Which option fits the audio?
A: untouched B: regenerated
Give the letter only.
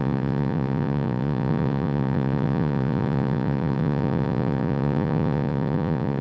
B